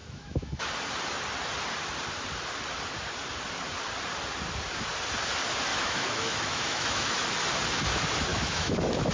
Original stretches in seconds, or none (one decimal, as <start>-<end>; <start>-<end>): 0.6-5.7; 7.3-8.3